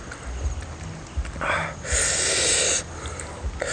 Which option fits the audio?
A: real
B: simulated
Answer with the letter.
A